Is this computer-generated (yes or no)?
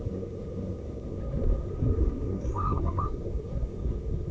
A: yes